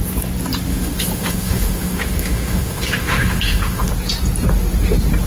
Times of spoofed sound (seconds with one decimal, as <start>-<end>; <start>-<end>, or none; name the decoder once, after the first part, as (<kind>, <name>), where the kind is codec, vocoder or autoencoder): 0.7-3.9 (autoencoder, DAC-VAE)

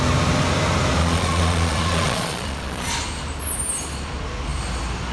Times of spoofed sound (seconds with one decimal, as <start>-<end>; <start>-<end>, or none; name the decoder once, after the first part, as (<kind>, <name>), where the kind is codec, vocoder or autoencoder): 1.0-2.9 (vocoder, Vocos)

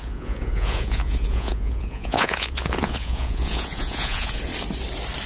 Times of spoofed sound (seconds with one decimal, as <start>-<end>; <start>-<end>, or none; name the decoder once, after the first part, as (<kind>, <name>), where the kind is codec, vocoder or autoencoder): 0.0-4.5 (vocoder, Vocos)

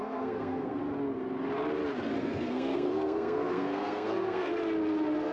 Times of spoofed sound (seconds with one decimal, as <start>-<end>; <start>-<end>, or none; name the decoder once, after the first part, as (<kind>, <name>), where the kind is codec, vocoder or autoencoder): 0.0-0.8 (codec, SNAC); 2.2-4.5

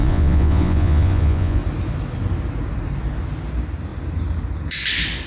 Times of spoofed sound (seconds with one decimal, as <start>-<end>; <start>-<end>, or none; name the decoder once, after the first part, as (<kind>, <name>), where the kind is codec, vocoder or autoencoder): 0.0-1.6 (vocoder, Vocos)

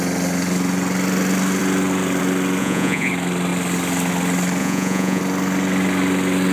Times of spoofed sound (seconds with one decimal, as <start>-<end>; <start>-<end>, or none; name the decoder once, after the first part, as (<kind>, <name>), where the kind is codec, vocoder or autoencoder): 2.6-3.1 (vocoder, Vocos); 4.6-5.2

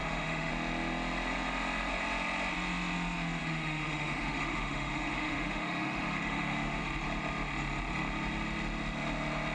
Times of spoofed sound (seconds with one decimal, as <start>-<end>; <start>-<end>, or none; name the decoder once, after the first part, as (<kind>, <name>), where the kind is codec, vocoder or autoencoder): 0.0-0.5 (autoencoder, DAC-VAE); 3.4-6.8

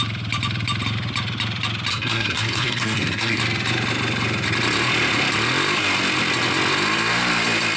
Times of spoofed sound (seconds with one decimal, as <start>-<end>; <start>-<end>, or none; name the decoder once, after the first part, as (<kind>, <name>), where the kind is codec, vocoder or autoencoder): 1.9-3.4 (codec, SNAC)